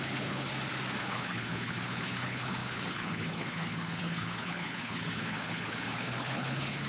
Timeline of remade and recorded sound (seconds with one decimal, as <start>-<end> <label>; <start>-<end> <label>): 0.0-0.5 remade; 0.5-1.0 recorded; 1.0-6.9 remade